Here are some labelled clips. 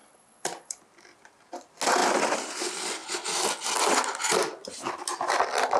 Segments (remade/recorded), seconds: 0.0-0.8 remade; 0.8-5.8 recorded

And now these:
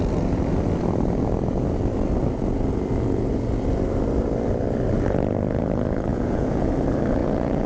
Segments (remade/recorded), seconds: 0.0-6.1 recorded; 6.1-6.7 remade; 6.7-7.2 recorded; 7.2-7.7 remade

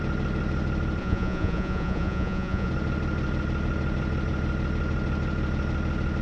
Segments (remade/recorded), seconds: 0.0-1.0 recorded; 1.0-2.7 remade; 2.7-6.2 recorded